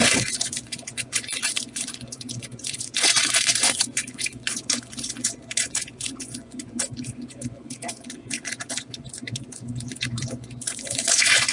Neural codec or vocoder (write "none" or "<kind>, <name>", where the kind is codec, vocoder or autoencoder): vocoder, Vocos